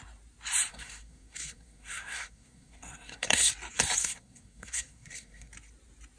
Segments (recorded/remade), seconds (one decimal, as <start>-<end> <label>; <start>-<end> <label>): 0.0-0.7 recorded; 0.7-3.5 remade; 3.5-4.0 recorded; 4.0-5.5 remade; 5.5-6.2 recorded